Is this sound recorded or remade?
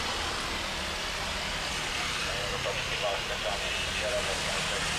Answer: recorded